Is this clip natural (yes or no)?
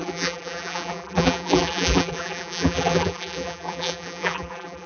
no